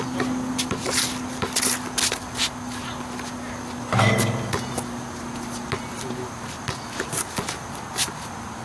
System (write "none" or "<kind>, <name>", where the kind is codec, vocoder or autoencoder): none